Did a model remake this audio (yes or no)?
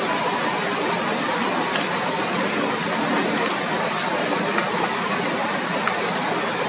no